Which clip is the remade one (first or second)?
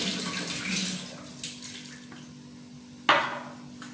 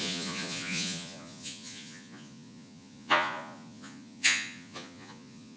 second